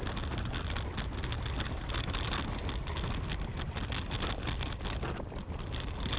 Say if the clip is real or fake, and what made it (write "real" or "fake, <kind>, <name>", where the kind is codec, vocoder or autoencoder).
real